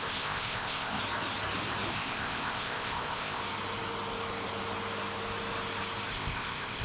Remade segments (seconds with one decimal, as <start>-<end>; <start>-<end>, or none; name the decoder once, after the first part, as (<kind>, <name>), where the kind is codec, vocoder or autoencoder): 0.0-1.0 (codec, ZipCodec); 1.9-3.4; 6.1-6.8